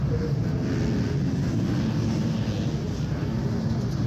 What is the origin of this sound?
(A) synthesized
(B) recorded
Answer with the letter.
B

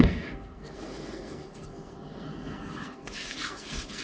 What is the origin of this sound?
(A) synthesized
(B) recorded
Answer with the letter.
A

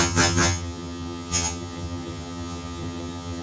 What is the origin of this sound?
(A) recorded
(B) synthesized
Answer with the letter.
B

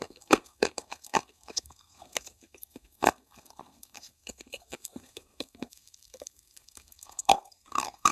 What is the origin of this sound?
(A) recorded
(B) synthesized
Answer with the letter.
B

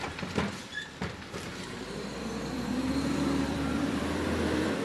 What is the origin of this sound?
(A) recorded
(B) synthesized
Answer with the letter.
B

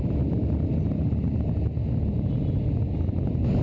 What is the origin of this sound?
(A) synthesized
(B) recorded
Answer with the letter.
B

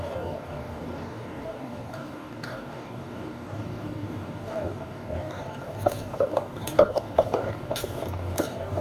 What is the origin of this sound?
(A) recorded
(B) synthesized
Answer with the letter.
B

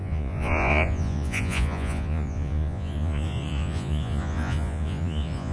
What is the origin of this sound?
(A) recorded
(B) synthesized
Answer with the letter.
B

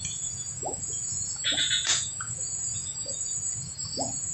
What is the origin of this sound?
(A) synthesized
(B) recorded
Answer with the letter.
A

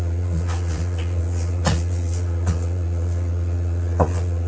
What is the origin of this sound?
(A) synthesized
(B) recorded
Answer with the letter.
A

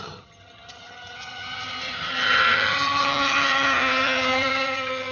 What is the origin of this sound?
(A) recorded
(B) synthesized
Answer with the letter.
B